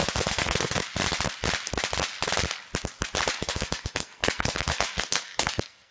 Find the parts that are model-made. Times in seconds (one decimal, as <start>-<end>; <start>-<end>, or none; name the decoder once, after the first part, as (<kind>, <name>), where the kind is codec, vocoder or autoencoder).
0.0-0.8 (codec, SNAC); 3.4-5.9